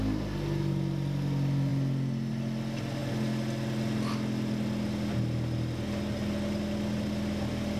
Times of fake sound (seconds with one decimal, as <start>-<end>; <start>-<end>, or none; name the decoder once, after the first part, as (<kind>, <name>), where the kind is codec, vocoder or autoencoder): none